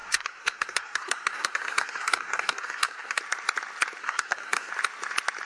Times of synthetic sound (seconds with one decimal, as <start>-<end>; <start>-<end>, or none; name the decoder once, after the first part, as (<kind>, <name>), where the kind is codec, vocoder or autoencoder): 0.0-3.2 (codec, SNAC); 4.0-4.7